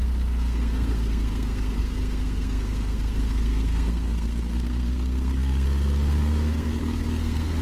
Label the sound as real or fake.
fake